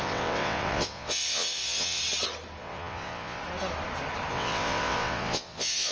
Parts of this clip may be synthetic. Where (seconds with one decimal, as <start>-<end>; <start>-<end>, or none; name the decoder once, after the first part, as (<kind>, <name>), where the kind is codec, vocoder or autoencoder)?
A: 0.0-2.0 (vocoder, WaveNeXt); 2.6-3.4; 4.3-5.9